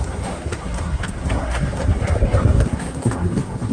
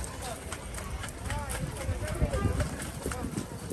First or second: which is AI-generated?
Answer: first